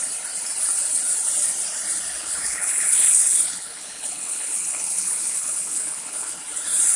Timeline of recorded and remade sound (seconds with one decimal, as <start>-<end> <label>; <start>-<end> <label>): 0.0-2.2 recorded; 2.2-6.4 remade; 6.4-7.0 recorded